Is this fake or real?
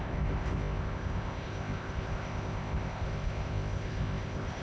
fake